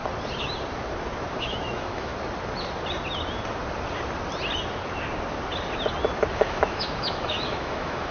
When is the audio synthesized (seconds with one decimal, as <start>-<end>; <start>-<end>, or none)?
1.3-2.1; 6.3-8.1